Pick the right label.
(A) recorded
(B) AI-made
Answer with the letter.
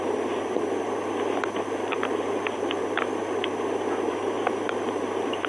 B